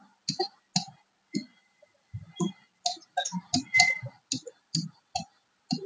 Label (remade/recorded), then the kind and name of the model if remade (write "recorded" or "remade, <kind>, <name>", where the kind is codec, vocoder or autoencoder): recorded